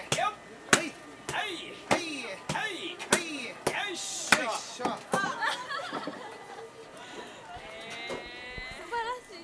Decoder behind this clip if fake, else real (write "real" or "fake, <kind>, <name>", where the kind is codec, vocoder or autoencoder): real